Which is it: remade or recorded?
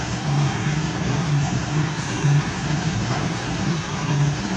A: remade